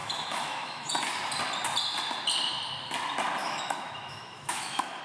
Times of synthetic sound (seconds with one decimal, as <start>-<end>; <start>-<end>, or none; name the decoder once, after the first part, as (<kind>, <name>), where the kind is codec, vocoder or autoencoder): 0.0-0.9 (autoencoder, DAC-VAE); 3.4-5.0